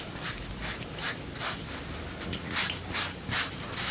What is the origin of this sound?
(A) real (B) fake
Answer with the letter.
A